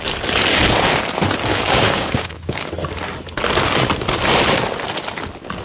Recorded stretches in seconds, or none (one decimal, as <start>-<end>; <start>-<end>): 0.0-1.5; 2.7-5.6